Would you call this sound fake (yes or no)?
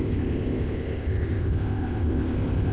yes